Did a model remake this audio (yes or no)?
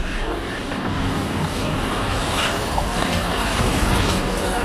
yes